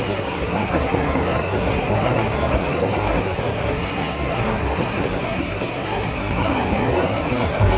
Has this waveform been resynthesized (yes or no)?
yes